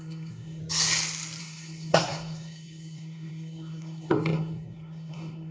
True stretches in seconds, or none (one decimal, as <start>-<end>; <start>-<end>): 0.6-1.4